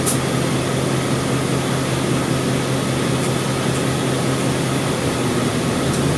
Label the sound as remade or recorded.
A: recorded